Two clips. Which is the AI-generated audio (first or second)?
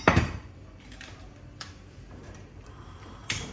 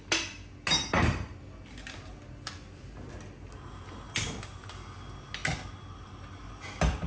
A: first